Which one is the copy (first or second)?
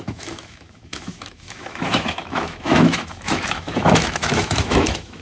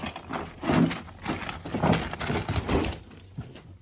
first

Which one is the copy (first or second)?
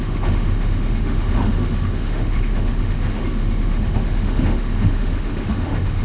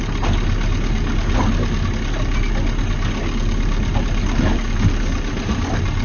first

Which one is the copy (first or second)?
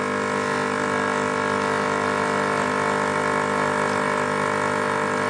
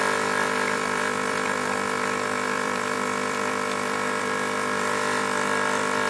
second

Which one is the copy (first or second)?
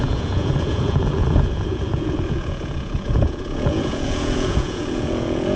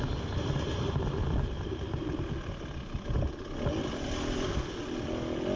first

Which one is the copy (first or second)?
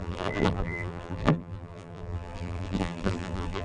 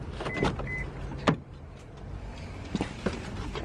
first